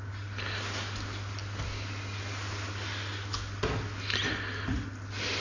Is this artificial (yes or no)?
no